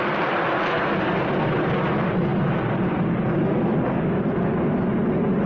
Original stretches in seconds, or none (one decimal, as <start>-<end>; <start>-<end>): 0.0-5.5